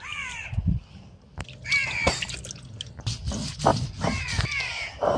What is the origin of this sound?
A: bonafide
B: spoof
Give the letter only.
A